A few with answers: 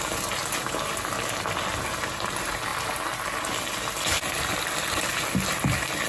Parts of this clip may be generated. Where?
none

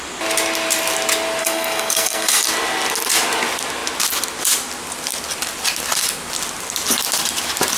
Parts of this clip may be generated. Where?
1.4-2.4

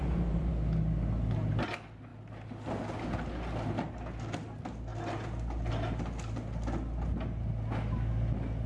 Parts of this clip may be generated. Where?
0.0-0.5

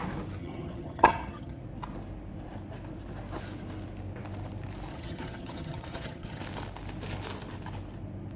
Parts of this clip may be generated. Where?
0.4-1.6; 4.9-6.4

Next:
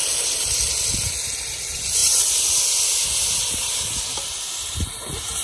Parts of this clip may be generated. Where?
none

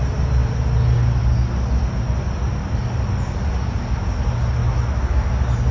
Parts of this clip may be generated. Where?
4.6-5.3